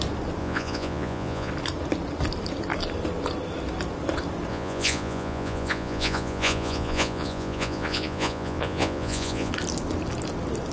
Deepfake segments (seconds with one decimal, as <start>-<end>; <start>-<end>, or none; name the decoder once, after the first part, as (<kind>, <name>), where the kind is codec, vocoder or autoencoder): 0.4-1.5 (vocoder, Vocos); 4.5-9.5